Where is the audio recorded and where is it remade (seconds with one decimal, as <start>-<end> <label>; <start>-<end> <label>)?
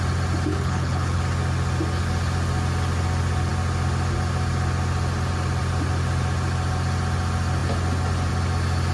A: 0.0-0.5 recorded; 0.5-1.2 remade; 1.2-8.9 recorded